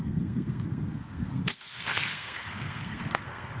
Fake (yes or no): yes